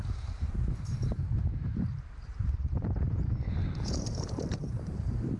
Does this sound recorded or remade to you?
remade